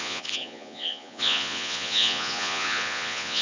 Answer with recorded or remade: remade